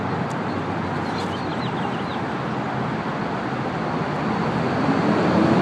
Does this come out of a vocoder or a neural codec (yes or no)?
no